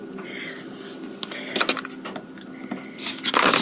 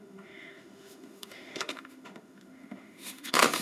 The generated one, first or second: second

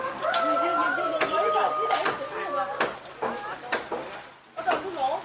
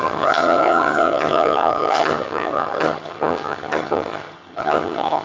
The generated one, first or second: second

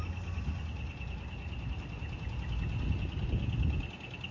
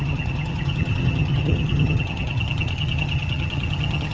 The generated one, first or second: second